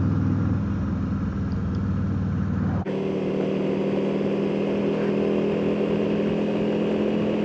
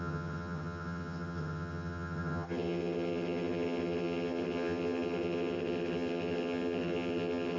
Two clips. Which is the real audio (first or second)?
first